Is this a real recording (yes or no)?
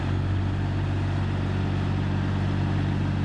yes